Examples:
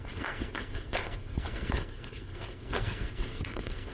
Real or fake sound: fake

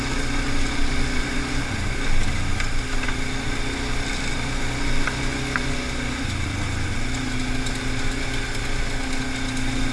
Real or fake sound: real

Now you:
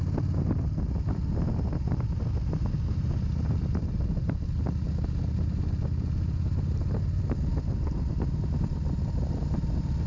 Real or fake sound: real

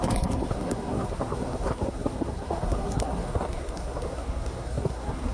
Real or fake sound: fake